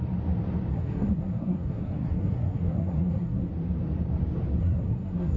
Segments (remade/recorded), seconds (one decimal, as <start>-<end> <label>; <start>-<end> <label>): 0.0-0.7 recorded; 0.7-3.5 remade; 3.5-4.6 recorded; 4.6-5.4 remade